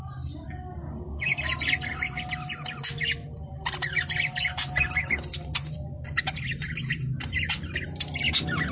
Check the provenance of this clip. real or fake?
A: real